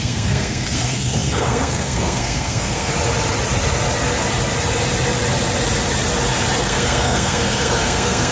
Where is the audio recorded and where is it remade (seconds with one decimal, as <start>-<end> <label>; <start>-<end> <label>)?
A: 0.0-2.9 remade; 2.9-6.6 recorded; 6.6-8.3 remade